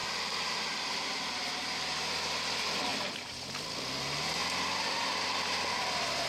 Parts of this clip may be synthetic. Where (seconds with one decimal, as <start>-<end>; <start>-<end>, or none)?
0.6-2.9; 3.8-4.4; 5.8-6.3